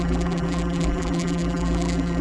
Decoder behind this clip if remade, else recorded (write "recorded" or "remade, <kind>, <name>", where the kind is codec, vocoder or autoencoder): remade, vocoder, BigVGAN v2